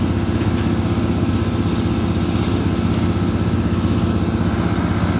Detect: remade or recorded recorded